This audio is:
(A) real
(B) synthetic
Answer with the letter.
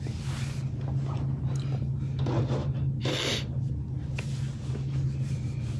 A